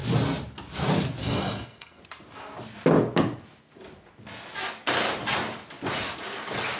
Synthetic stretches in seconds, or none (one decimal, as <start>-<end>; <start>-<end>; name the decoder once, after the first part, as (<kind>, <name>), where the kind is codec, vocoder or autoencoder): 1.2-2.0 (codec, SNAC)